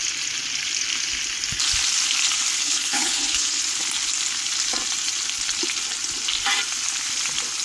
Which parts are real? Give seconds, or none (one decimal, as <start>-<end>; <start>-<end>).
0.0-2.6; 3.6-7.6